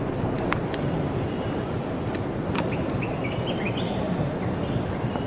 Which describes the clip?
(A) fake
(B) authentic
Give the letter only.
B